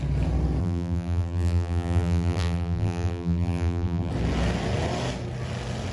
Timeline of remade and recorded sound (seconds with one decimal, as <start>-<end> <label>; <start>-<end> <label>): 0.0-0.6 recorded; 0.6-4.1 remade; 4.1-5.9 recorded

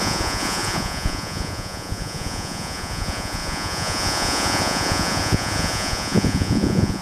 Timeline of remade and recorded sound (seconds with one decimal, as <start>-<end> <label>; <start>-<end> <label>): 0.0-7.0 remade

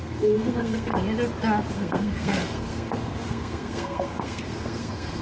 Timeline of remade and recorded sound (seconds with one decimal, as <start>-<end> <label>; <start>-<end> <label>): 0.0-0.9 remade; 0.9-1.7 recorded; 1.7-5.2 remade

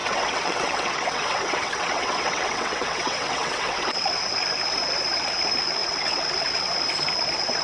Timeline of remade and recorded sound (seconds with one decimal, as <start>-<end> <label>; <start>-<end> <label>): 0.0-4.2 remade; 4.2-5.8 recorded; 5.8-6.7 remade; 6.7-7.6 recorded

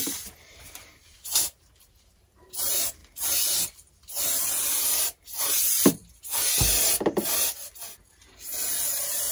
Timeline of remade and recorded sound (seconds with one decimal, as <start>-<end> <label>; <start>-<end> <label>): 0.0-6.0 remade; 6.0-8.7 recorded; 8.7-9.3 remade

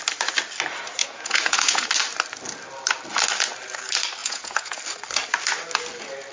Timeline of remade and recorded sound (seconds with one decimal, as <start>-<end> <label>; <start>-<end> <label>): 0.0-1.0 recorded; 1.0-1.9 remade; 1.9-4.2 recorded; 4.2-4.8 remade; 4.8-6.3 recorded

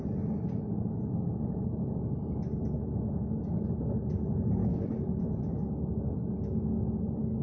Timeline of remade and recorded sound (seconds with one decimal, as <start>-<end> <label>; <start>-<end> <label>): 0.0-1.7 remade; 1.7-3.4 recorded; 3.4-4.6 remade; 4.6-7.4 recorded

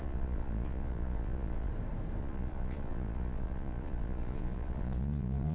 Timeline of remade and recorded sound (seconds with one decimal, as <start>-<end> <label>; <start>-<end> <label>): 0.0-1.7 remade; 1.7-2.2 recorded; 2.2-5.5 remade